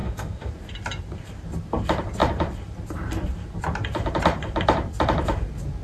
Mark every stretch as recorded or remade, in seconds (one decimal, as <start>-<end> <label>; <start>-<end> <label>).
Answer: 0.0-0.5 remade; 0.5-5.8 recorded